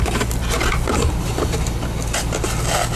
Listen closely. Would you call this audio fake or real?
real